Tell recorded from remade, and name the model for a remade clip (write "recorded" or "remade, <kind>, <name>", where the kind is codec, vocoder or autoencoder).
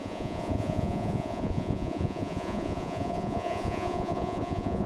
remade, vocoder, Vocos